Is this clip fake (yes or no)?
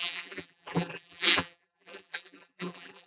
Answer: yes